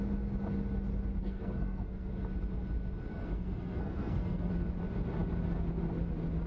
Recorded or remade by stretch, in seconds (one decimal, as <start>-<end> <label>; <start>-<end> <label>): 0.0-1.2 recorded; 1.2-2.1 remade; 2.1-3.1 recorded; 3.1-4.5 remade; 4.5-6.5 recorded